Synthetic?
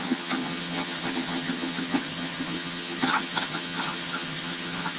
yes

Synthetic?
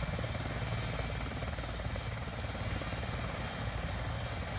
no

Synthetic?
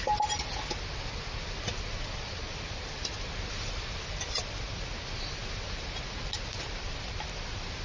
no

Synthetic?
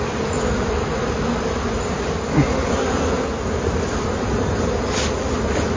no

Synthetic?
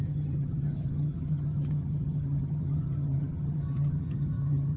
yes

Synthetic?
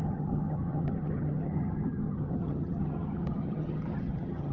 yes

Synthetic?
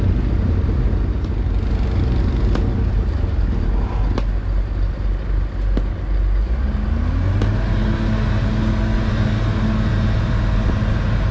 no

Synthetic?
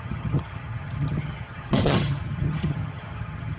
yes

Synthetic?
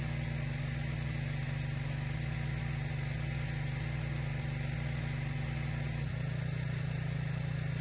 no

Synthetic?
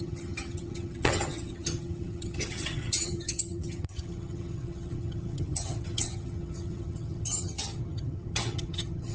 yes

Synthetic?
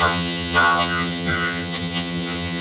yes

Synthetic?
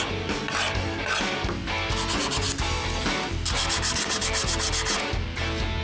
no